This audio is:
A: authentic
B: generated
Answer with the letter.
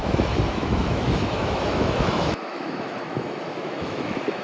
B